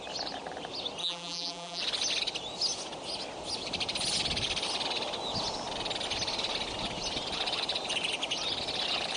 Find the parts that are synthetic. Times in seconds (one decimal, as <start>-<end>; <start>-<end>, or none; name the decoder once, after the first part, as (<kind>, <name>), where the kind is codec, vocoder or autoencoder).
1.0-1.8 (vocoder, BigVGAN v2)